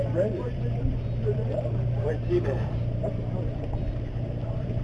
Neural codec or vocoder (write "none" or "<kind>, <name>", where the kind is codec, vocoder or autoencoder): vocoder, BigVGAN v2